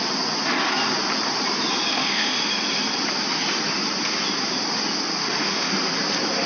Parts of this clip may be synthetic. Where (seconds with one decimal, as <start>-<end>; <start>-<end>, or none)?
1.9-2.5; 5.2-5.7